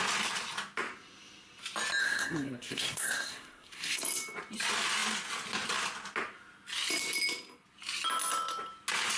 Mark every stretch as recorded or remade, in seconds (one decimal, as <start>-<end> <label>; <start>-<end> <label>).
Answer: 0.0-2.0 recorded; 2.0-4.0 remade; 4.0-9.2 recorded